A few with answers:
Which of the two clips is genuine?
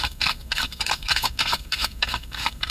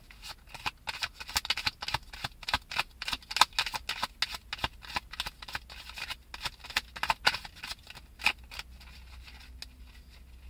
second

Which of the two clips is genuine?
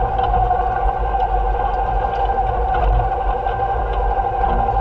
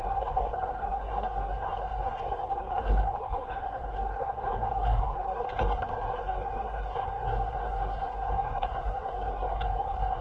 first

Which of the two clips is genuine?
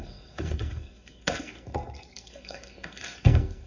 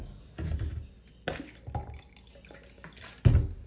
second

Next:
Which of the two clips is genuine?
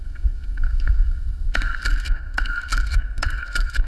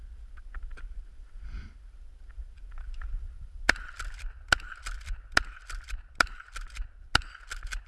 second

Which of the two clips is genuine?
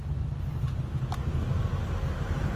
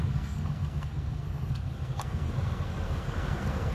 first